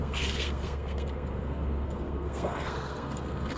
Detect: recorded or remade remade